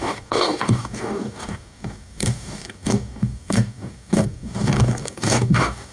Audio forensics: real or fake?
fake